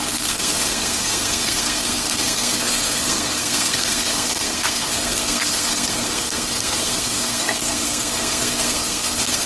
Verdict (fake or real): fake